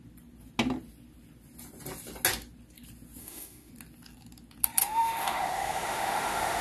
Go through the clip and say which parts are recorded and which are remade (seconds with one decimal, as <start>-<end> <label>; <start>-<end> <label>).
0.0-3.2 recorded; 3.2-3.7 remade; 3.7-4.8 recorded; 4.8-6.6 remade